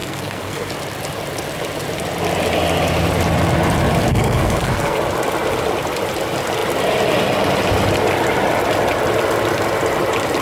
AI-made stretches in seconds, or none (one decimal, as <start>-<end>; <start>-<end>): 0.0-0.7; 4.1-5.0